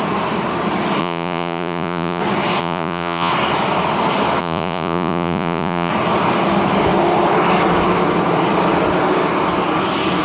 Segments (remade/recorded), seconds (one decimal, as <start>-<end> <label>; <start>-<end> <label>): 0.0-1.0 recorded; 1.0-2.2 remade; 2.2-2.6 recorded; 2.6-3.3 remade; 3.3-4.4 recorded; 4.4-5.9 remade; 5.9-10.2 recorded